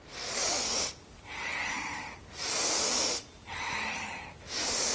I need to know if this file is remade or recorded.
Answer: recorded